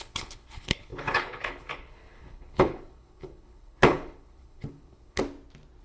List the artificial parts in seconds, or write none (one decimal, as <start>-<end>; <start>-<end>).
0.0-5.2